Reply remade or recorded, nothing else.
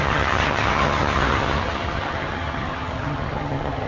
remade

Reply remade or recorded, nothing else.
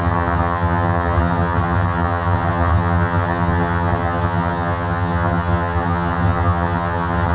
remade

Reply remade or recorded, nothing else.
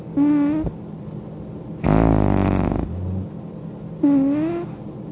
recorded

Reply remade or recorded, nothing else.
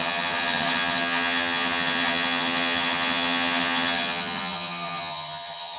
remade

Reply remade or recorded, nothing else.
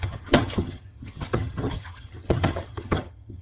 remade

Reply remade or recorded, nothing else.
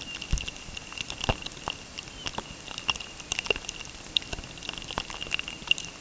recorded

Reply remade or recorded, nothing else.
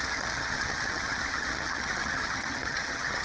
remade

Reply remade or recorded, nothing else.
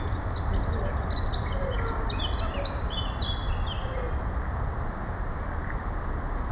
recorded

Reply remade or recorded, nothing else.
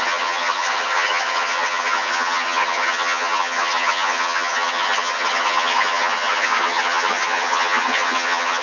remade